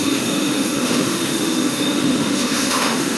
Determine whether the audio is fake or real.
fake